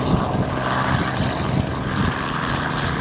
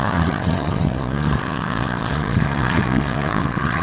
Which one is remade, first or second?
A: second